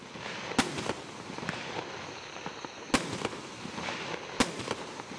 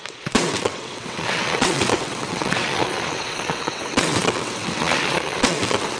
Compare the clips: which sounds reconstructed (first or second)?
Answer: second